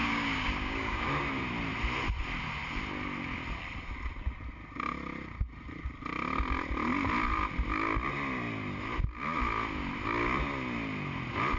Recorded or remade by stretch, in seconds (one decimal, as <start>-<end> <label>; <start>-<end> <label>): 0.0-1.3 remade; 1.3-11.6 recorded